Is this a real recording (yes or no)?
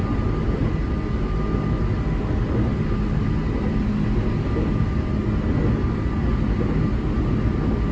yes